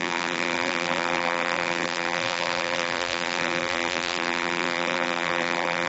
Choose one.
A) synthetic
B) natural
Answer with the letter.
A